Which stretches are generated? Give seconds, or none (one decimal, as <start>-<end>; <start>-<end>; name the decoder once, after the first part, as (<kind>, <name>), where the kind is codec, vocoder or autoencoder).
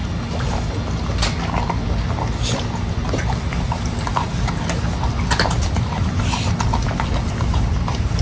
none